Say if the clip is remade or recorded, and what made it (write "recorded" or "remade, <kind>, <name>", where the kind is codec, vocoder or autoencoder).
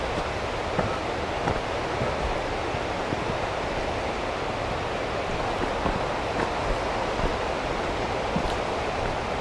recorded